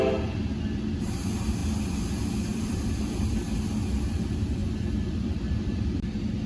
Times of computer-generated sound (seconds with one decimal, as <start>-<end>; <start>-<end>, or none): 2.5-3.3; 4.6-6.5